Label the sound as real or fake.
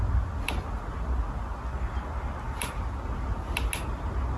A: real